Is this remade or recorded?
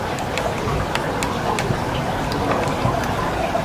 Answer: recorded